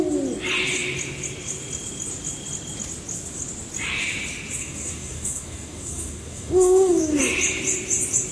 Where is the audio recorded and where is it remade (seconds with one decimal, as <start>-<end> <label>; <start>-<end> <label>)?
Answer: 0.0-4.6 recorded; 4.6-7.2 remade; 7.2-8.3 recorded